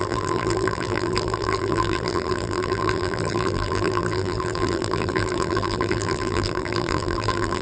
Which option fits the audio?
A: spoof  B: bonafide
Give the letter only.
A